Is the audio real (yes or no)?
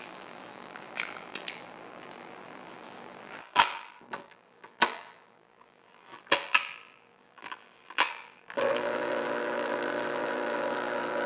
no